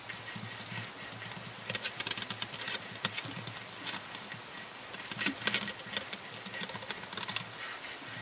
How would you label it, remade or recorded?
recorded